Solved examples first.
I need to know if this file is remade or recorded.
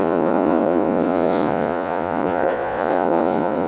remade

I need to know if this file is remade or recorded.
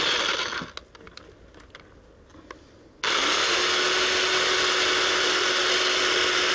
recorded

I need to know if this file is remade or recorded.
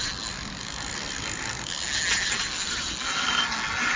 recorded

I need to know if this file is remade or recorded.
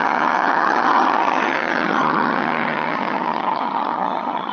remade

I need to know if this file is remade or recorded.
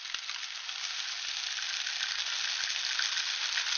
recorded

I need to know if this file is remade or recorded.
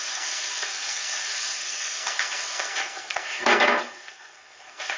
remade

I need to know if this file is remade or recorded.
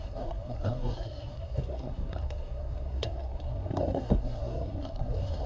remade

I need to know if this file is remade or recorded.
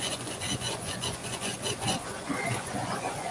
remade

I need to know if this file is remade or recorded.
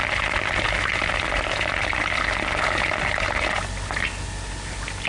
recorded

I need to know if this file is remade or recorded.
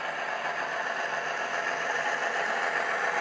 recorded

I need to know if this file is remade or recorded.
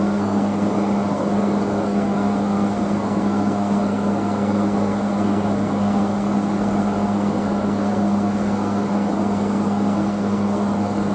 remade